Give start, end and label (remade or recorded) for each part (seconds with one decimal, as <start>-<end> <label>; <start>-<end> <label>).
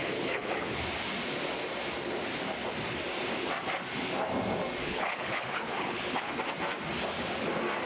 0.0-0.8 remade; 0.8-4.8 recorded; 4.8-6.3 remade; 6.3-7.9 recorded